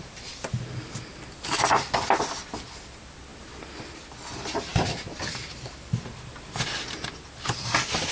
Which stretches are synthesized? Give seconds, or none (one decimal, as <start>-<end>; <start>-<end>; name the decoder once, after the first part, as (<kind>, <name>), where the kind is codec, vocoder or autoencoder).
none